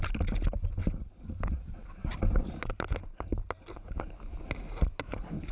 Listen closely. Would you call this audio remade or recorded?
recorded